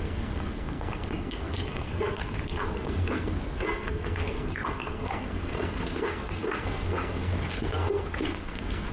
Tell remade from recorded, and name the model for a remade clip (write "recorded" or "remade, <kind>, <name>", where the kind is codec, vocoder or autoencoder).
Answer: remade, codec, SNAC